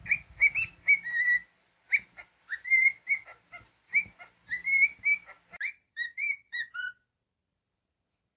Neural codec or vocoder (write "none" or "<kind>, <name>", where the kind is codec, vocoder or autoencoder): vocoder, BigVGAN v2